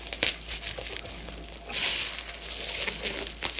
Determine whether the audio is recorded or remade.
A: recorded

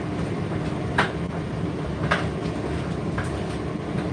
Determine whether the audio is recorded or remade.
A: recorded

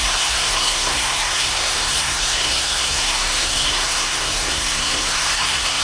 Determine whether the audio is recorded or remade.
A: remade